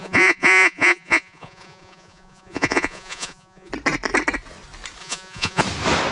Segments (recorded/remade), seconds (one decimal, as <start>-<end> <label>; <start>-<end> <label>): 0.0-3.7 remade; 3.7-5.0 recorded; 5.0-5.6 remade; 5.6-6.1 recorded